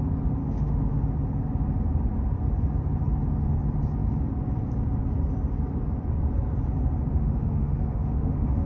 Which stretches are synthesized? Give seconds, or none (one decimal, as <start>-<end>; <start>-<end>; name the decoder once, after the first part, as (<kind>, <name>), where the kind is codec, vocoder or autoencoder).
0.4-1.0 (autoencoder, DAC-VAE); 7.1-8.7